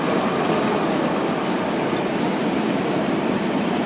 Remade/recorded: recorded